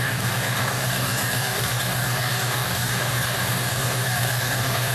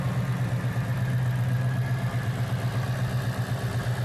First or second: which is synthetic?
first